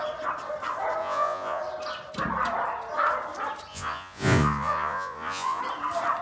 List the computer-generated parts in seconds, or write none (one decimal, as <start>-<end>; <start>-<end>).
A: 1.0-1.6; 3.7-5.6